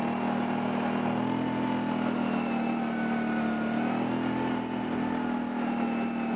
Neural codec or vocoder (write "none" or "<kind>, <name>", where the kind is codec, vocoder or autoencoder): none